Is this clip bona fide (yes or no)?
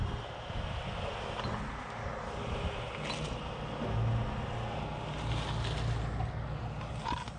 yes